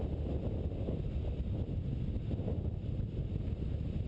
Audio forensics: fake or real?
real